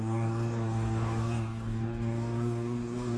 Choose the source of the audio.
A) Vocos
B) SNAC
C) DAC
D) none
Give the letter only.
C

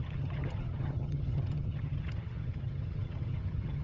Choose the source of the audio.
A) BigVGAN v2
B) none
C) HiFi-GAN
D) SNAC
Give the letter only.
C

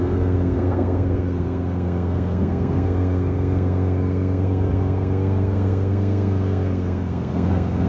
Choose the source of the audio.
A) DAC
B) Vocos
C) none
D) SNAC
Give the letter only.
D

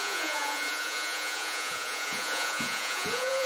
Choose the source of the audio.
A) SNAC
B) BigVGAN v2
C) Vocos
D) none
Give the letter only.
C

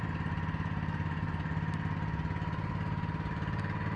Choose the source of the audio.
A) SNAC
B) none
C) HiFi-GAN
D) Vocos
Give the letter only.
B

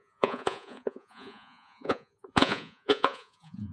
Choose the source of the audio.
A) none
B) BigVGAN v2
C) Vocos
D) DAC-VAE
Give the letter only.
C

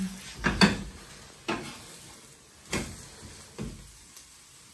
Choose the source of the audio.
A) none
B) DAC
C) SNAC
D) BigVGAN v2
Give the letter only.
A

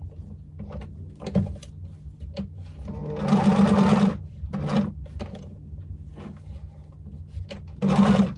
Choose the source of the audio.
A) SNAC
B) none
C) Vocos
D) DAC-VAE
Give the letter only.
B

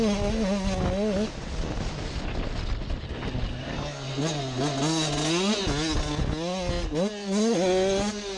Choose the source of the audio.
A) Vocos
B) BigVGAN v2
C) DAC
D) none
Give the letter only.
D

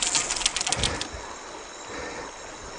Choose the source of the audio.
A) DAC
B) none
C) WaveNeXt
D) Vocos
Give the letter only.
B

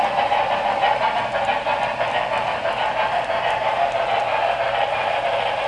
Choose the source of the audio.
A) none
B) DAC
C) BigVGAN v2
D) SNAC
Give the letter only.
C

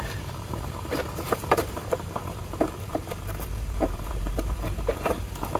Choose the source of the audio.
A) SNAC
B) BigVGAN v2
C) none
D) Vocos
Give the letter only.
B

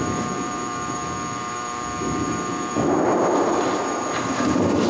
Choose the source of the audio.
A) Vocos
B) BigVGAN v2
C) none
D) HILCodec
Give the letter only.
B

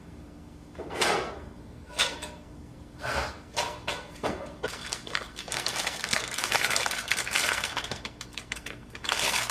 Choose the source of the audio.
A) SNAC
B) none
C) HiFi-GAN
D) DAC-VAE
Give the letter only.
A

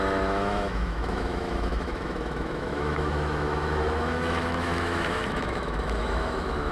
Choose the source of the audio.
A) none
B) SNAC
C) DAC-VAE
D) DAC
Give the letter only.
C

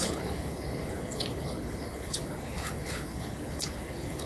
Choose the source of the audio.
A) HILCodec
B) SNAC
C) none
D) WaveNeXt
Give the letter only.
A